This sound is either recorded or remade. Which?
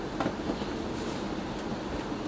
recorded